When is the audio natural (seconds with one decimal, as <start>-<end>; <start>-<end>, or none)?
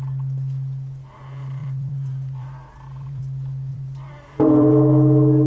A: 0.0-1.6; 3.2-3.7; 4.7-5.5